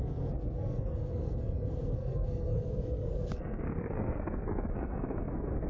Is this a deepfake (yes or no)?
yes